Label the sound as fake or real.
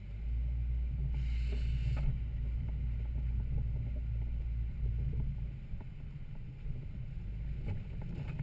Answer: real